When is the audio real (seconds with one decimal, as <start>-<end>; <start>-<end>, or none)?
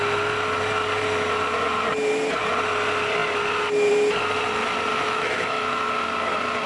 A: 0.0-4.9; 5.9-6.7